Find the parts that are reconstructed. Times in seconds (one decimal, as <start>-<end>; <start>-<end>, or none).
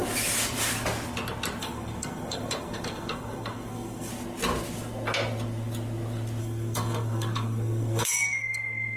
1.6-4.1; 6.4-9.0